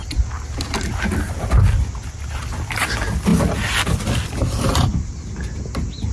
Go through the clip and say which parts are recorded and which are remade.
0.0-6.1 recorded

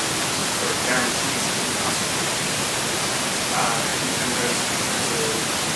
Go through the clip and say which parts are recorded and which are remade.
0.0-0.4 recorded; 0.4-1.9 remade; 1.9-3.9 recorded; 3.9-5.8 remade

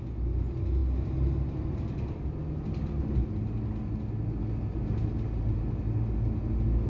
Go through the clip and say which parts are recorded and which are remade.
0.0-6.9 recorded

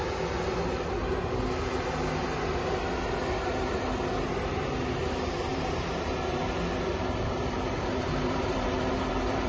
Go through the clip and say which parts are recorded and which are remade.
0.0-5.5 recorded; 5.5-6.4 remade; 6.4-6.9 recorded; 6.9-9.5 remade

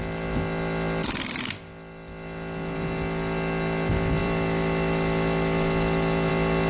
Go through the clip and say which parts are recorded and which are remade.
0.0-4.2 recorded; 4.2-6.3 remade; 6.3-6.7 recorded

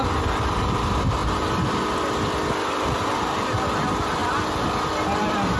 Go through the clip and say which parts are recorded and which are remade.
0.0-5.6 recorded